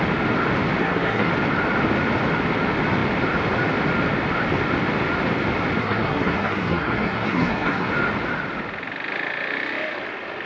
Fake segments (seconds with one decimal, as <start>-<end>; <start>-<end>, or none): 0.8-1.3; 5.8-7.9